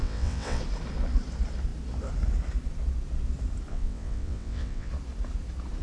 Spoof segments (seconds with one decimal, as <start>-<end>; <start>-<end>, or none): 0.0-0.6; 3.7-4.9